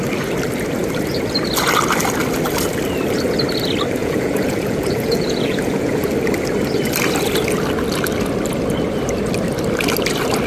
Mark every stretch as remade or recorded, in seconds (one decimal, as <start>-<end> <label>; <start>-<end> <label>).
0.0-4.0 recorded; 4.0-6.1 remade; 6.1-10.5 recorded